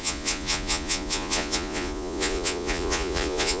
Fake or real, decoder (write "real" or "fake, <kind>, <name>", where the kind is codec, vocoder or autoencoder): fake, vocoder, Vocos